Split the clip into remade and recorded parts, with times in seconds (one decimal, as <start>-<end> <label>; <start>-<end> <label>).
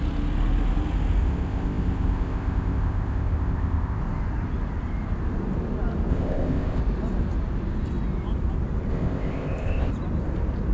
0.0-1.2 recorded; 1.2-4.0 remade; 4.0-6.1 recorded; 6.1-6.8 remade; 6.8-8.9 recorded; 8.9-9.9 remade; 9.9-10.7 recorded